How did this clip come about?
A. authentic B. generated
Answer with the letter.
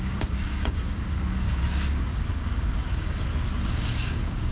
B